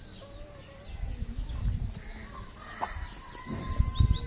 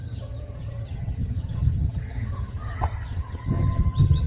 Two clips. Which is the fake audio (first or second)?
second